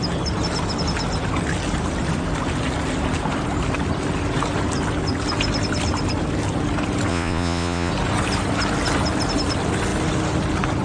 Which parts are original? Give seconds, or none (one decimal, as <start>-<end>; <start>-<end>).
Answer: 0.0-7.1; 7.9-10.8